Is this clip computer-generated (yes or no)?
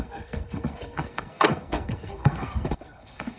yes